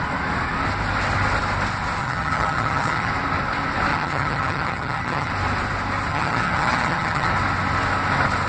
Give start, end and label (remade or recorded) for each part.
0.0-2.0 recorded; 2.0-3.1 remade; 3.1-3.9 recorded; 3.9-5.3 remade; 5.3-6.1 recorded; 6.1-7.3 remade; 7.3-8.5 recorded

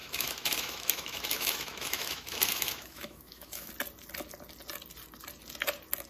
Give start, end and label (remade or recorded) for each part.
0.0-3.7 remade; 3.7-6.1 recorded

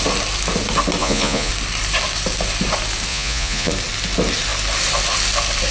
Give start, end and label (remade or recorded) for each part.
0.0-1.0 recorded; 1.0-1.5 remade; 1.5-3.1 recorded; 3.1-3.7 remade; 3.7-5.7 recorded

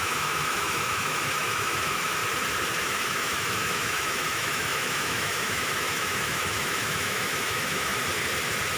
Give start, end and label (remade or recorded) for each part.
0.0-2.2 remade; 2.2-2.8 recorded; 2.8-7.9 remade; 7.9-8.8 recorded